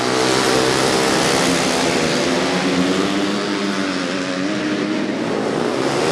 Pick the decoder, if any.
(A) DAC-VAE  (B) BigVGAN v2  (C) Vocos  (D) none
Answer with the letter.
D